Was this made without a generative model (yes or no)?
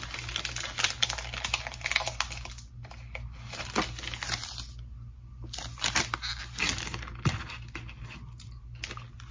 yes